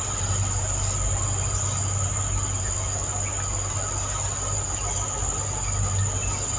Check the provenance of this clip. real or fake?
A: real